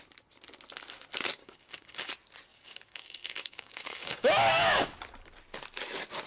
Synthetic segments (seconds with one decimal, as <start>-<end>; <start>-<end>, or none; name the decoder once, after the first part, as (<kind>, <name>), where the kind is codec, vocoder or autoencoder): 1.4-2.1 (codec, DAC); 2.5-4.9